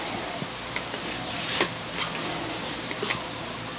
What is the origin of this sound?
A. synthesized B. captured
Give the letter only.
B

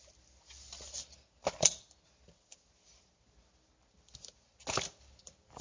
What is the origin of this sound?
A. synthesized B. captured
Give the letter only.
B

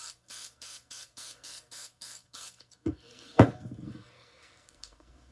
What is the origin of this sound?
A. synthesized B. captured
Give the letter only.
A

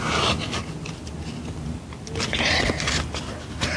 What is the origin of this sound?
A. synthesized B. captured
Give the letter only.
B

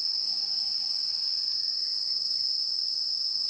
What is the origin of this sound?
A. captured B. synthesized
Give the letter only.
A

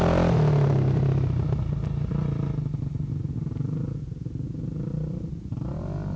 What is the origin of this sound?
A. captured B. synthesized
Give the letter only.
A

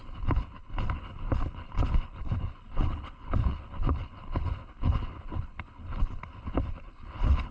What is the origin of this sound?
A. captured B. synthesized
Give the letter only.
B